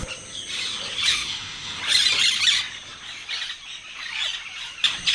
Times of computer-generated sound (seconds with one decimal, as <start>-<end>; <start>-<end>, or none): 1.1-1.8